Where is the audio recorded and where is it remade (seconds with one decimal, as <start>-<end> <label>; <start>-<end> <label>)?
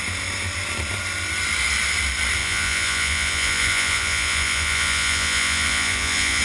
0.0-2.4 recorded; 2.4-6.4 remade